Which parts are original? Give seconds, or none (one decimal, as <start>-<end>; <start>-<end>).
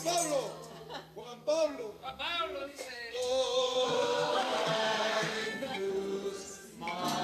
0.0-1.2; 2.2-2.6; 5.9-7.2